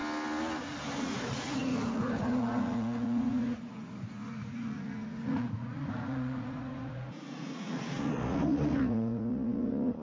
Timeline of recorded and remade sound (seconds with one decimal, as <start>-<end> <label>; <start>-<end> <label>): 0.0-1.0 recorded; 1.0-10.0 remade